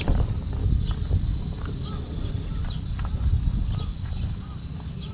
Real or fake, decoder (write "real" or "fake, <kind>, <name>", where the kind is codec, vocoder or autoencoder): real